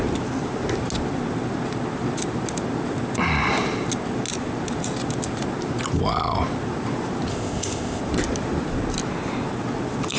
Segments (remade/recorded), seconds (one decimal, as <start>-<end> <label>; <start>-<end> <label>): 0.0-7.3 recorded; 7.3-8.0 remade; 8.0-10.2 recorded